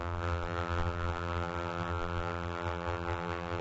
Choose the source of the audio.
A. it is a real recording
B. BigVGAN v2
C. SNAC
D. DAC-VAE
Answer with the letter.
B